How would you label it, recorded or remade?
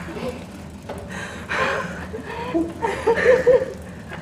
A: recorded